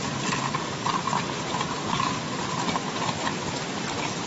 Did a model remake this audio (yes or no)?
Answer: no